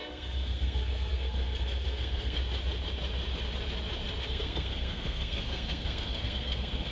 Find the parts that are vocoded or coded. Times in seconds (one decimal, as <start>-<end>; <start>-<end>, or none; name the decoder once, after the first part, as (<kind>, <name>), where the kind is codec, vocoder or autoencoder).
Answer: 0.0-2.4 (codec, SNAC); 4.2-6.9